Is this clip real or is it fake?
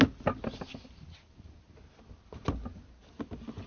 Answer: real